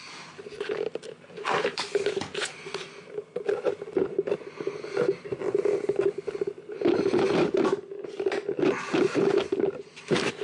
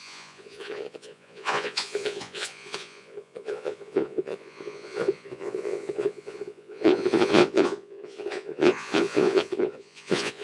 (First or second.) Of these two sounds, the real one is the first